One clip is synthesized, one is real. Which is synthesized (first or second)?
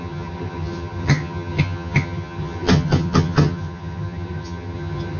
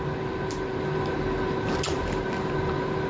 first